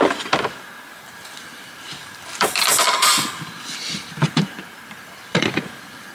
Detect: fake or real fake